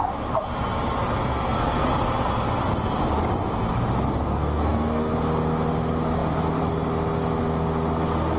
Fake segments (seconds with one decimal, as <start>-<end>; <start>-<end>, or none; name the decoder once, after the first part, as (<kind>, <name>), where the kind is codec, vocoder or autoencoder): 1.3-1.9 (codec, SNAC); 4.2-5.1